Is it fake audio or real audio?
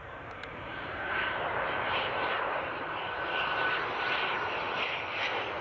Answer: fake